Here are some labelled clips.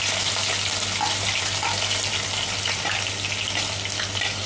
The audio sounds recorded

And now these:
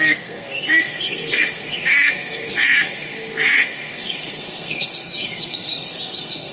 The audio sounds remade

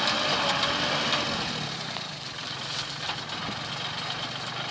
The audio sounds recorded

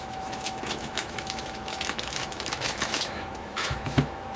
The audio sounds remade